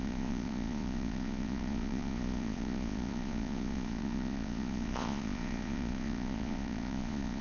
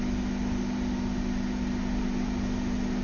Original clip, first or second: second